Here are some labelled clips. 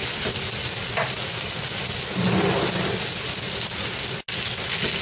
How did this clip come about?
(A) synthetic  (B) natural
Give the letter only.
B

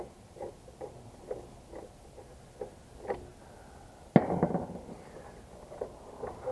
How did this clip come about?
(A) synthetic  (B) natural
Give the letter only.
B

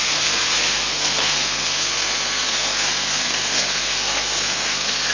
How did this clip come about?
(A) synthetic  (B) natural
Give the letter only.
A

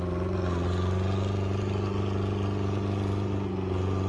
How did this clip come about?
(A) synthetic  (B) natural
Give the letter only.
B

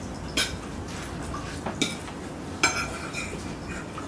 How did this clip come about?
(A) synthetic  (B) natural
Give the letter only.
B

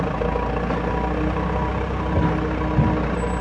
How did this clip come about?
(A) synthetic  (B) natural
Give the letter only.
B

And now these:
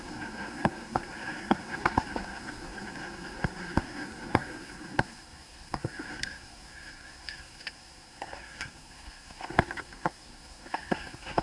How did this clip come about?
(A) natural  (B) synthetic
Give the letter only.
B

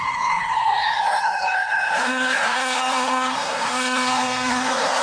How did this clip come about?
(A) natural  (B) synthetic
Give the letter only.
B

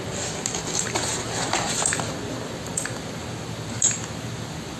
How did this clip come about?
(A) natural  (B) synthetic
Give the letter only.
A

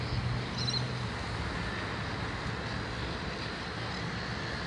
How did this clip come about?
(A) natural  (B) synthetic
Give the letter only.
A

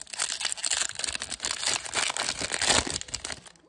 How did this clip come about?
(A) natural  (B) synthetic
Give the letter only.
A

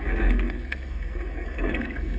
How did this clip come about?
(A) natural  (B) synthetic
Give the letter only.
B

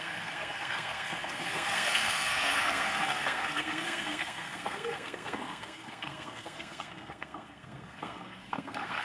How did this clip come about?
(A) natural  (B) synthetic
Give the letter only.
B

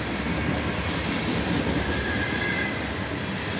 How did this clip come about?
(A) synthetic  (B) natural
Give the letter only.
B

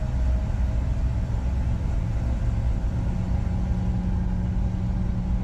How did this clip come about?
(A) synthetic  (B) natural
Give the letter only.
B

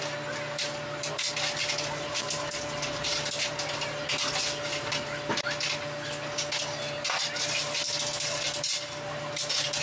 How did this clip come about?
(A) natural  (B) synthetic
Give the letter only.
A